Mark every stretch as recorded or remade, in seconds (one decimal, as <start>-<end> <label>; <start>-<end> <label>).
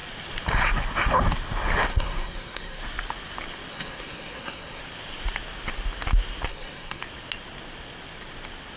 0.0-1.9 recorded; 1.9-2.8 remade; 2.8-3.7 recorded; 3.7-4.8 remade; 4.8-6.5 recorded; 6.5-7.0 remade; 7.0-8.8 recorded